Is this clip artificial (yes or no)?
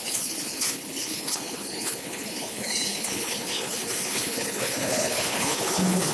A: yes